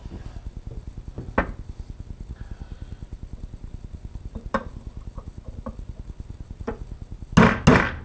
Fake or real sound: real